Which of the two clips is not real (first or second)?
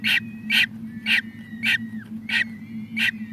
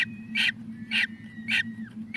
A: second